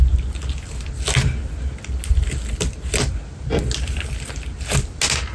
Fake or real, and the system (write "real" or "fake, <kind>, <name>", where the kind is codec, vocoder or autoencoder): real